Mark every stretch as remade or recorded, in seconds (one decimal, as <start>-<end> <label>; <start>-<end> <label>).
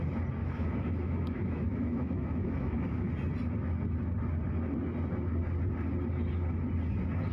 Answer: 0.0-0.4 recorded; 0.4-3.1 remade; 3.1-7.3 recorded